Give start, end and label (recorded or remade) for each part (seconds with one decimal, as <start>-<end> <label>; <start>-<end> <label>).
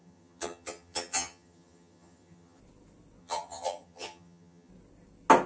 0.0-2.6 remade; 2.6-3.2 recorded; 3.2-4.7 remade; 4.7-5.5 recorded